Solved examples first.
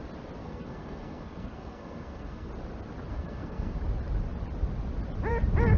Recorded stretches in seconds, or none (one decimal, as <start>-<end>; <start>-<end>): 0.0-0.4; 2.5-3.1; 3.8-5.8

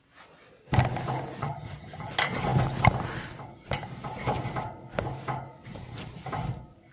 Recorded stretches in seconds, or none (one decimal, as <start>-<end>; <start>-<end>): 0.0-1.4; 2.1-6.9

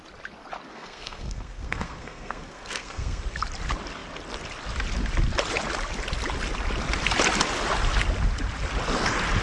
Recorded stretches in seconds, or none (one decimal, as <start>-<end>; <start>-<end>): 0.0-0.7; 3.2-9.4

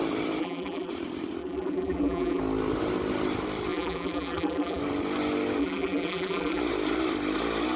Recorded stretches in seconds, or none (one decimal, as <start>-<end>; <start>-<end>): 0.0-0.4; 0.9-1.4; 2.4-3.7; 4.8-5.6; 6.6-7.8

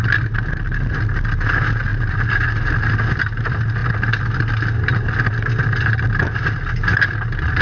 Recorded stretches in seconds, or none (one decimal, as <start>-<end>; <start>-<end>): 0.0-7.6

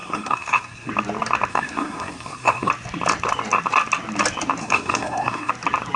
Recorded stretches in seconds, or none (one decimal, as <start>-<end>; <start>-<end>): 0.9-1.5; 2.7-4.6; 5.5-6.0